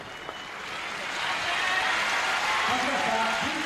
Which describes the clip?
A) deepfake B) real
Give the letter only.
B